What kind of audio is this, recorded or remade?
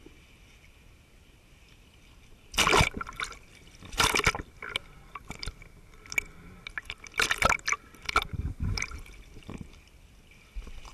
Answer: recorded